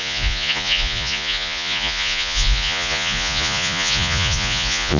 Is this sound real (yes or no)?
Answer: no